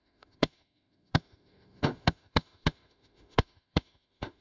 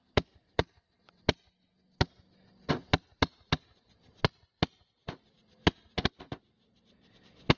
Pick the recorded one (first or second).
second